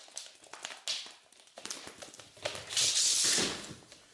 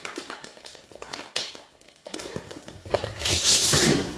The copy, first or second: second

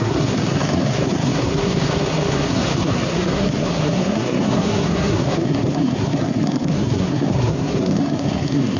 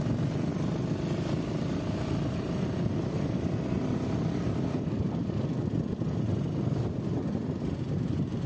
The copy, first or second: first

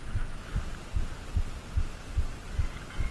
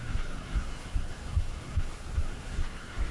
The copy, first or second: second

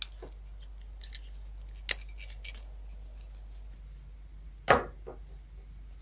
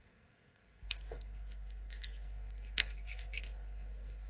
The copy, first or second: second